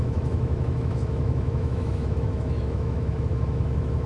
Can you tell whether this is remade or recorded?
remade